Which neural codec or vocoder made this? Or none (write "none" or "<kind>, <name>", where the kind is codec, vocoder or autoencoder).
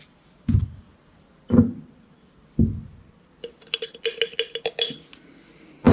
none